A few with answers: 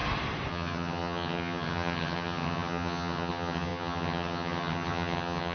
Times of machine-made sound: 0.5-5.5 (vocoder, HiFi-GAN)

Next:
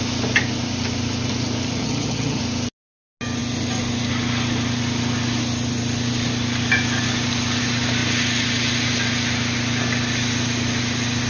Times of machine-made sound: 1.8-2.4 (vocoder, HiFi-GAN)

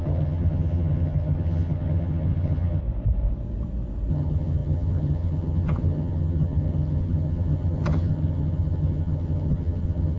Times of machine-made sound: 0.0-2.8 (vocoder, HiFi-GAN); 4.1-10.2

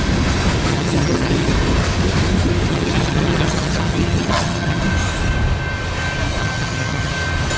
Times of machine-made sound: 0.7-1.5 (vocoder, HiFi-GAN); 2.7-4.8; 6.4-7.1

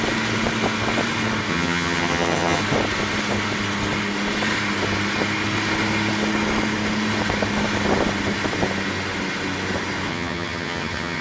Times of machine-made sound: 1.5-2.6 (vocoder, HiFi-GAN); 10.1-11.2